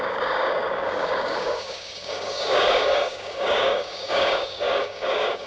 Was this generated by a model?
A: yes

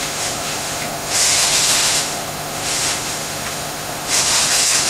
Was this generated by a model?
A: yes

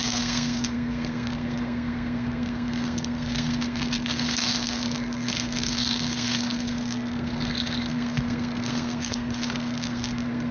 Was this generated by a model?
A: yes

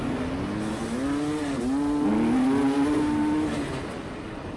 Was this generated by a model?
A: no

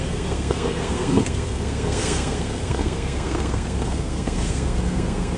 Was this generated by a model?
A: yes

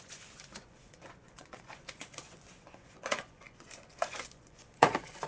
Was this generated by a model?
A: yes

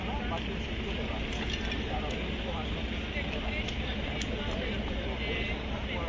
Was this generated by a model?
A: no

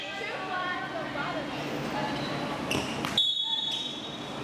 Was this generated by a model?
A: no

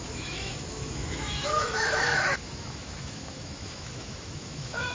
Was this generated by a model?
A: yes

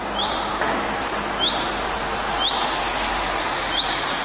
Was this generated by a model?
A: no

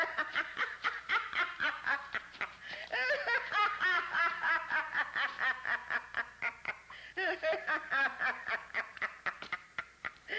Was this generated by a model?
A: yes